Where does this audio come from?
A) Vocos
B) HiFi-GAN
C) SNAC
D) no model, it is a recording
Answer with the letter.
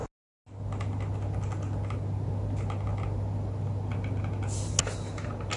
D